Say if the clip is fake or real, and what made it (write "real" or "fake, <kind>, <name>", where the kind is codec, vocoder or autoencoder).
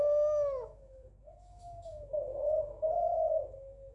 fake, autoencoder, DAC-VAE